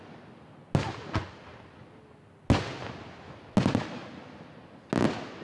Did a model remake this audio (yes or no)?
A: no